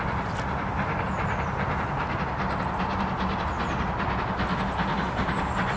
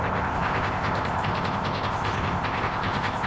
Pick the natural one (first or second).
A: first